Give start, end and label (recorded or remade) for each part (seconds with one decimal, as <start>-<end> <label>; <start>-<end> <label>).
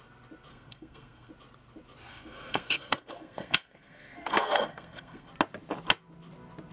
0.0-0.5 recorded; 0.5-1.3 remade; 1.3-2.1 recorded; 2.1-5.3 remade; 5.3-6.7 recorded